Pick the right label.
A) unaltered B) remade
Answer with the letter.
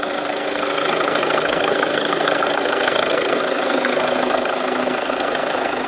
B